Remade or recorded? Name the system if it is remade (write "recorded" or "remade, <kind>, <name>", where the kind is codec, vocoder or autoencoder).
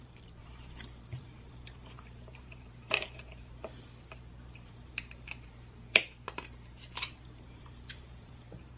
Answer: remade, vocoder, BigVGAN v2